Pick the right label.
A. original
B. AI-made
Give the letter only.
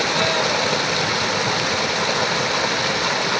A